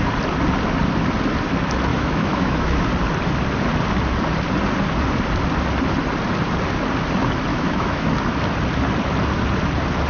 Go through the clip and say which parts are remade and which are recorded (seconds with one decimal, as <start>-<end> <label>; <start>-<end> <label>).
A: 0.0-1.9 recorded; 1.9-2.8 remade; 2.8-7.5 recorded; 7.5-8.1 remade; 8.1-10.1 recorded